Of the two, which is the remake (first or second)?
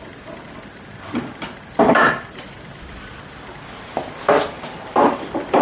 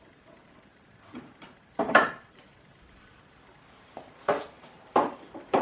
second